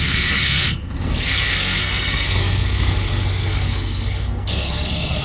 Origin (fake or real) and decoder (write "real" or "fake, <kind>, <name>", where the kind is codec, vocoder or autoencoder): fake, codec, SNAC